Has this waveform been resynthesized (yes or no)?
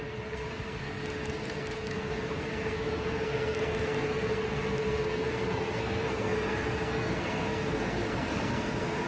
yes